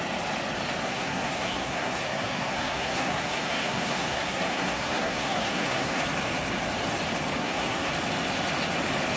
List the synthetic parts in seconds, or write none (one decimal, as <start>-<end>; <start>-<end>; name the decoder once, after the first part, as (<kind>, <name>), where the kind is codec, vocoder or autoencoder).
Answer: 0.8-6.0 (codec, SNAC); 7.4-7.9